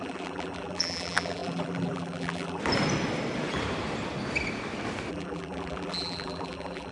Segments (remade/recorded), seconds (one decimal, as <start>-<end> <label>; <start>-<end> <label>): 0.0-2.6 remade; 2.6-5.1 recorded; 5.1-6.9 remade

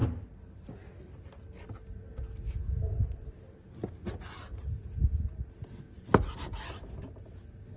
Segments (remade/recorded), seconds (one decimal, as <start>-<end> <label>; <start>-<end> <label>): 0.0-7.8 recorded

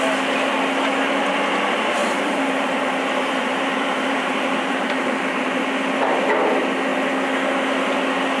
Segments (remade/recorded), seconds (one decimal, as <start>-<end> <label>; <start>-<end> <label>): 0.0-2.0 recorded; 2.0-5.6 remade; 5.6-8.4 recorded